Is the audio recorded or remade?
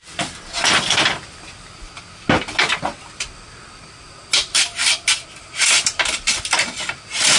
recorded